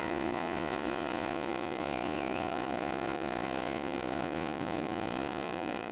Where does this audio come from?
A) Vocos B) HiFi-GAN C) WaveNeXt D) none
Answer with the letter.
A